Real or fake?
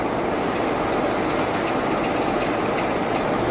real